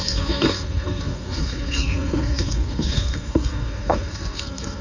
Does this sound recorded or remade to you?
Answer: remade